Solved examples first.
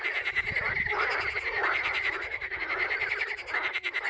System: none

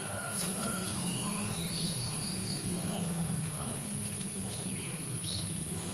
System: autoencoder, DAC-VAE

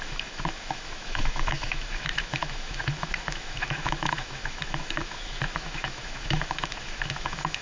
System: autoencoder, DAC-VAE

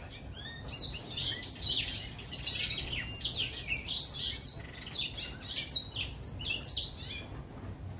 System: none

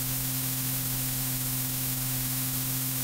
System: autoencoder, DAC-VAE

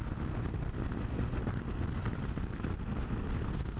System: none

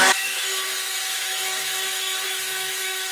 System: autoencoder, DAC-VAE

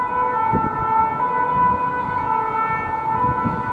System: none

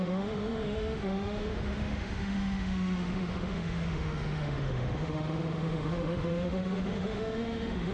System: autoencoder, DAC-VAE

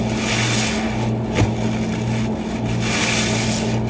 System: none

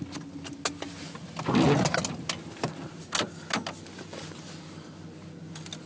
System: none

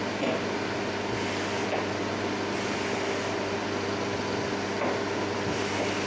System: none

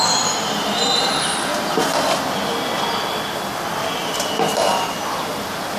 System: none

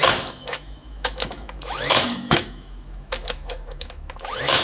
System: autoencoder, DAC-VAE